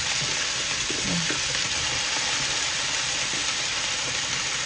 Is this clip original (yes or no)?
yes